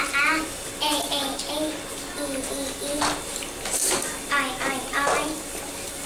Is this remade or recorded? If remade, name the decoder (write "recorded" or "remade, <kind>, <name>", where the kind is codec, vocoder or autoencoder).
recorded